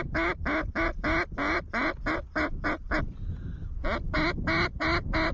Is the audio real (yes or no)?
yes